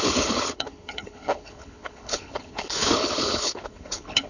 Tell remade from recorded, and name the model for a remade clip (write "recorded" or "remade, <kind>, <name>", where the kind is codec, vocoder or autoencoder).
remade, codec, HILCodec